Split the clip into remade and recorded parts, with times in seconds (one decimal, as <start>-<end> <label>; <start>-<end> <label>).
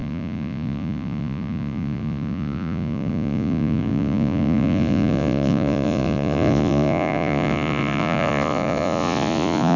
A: 0.0-9.8 remade